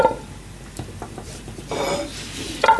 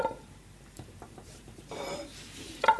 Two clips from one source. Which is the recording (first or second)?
first